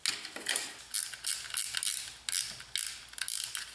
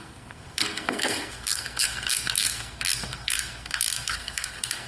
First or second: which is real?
first